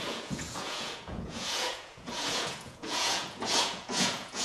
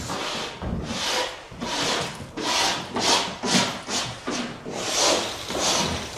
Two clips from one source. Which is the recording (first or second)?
second